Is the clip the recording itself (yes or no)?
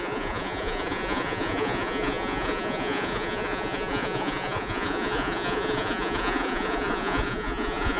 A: no